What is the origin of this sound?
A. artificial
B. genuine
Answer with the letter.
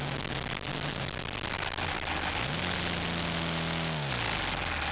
B